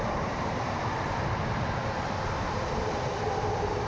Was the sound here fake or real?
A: fake